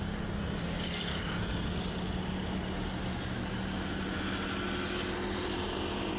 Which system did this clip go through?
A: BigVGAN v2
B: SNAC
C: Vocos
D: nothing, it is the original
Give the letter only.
D